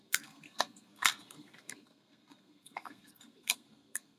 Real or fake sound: fake